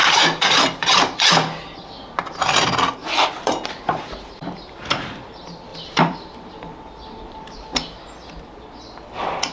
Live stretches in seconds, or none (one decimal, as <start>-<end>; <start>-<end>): 1.2-3.0; 5.3-5.7; 7.9-9.5

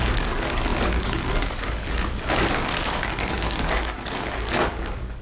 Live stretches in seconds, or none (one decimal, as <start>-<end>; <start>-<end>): none

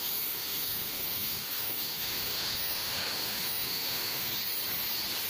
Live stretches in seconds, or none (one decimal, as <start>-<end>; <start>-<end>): 4.3-5.3

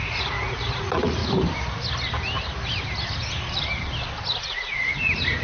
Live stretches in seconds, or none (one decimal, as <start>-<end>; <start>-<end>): 1.2-4.4

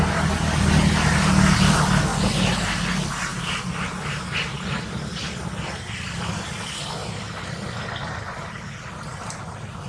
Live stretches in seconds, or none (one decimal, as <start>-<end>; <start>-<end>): 0.0-9.9